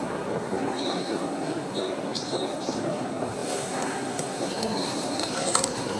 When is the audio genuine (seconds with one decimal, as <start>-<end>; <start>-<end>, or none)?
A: none